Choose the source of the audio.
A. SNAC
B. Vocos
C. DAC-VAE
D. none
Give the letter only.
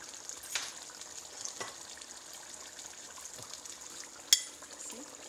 D